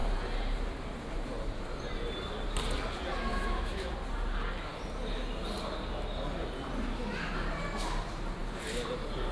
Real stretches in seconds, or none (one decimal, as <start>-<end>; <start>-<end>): 0.0-3.3; 3.9-9.3

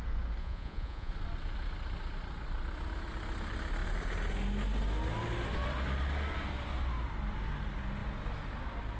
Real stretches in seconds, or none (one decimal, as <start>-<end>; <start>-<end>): 0.0-0.4; 1.1-9.0